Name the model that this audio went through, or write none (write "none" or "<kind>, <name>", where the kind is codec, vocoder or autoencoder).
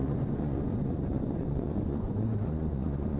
vocoder, Vocos